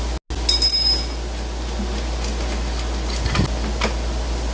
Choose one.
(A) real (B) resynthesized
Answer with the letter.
A